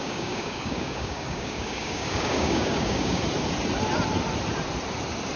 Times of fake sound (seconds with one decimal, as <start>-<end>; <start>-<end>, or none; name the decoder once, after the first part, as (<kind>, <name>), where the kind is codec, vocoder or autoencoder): 0.0-3.2 (codec, DAC)